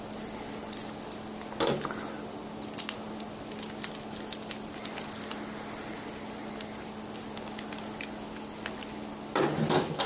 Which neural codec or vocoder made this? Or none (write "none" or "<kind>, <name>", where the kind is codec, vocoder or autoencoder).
none